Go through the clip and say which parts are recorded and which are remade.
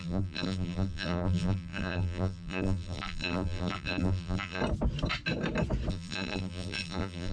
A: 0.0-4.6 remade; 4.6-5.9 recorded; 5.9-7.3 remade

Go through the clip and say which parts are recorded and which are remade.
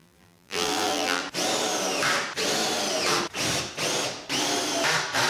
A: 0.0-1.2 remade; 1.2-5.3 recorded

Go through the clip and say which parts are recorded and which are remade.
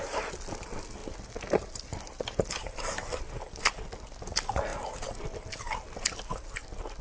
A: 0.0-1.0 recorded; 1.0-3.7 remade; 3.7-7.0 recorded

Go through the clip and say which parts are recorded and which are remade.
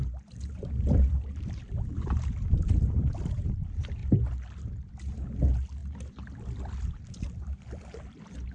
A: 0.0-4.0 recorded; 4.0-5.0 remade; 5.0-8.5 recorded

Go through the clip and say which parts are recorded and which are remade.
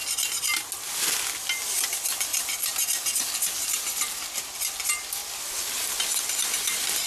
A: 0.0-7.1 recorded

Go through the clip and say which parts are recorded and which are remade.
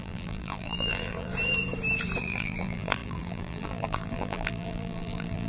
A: 0.0-1.3 remade; 1.3-2.2 recorded; 2.2-5.5 remade